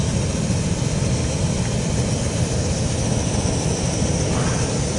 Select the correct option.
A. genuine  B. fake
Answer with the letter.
A